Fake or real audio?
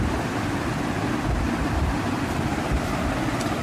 real